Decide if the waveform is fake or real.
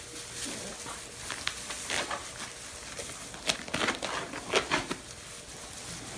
real